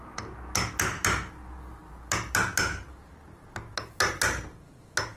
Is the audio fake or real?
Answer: real